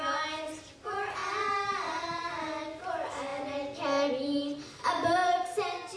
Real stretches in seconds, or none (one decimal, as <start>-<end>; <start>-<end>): 0.0-6.0